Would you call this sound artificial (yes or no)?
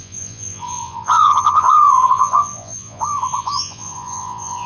yes